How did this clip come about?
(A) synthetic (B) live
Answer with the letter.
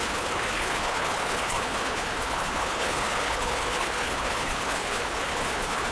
A